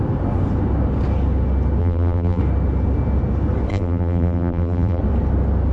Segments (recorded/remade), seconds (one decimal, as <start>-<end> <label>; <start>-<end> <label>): 0.0-1.8 recorded; 1.8-2.4 remade; 2.4-3.7 recorded; 3.7-5.0 remade; 5.0-5.7 recorded